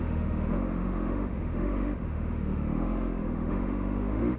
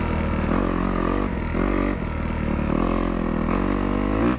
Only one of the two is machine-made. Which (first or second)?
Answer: first